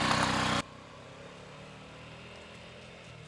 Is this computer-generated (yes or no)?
no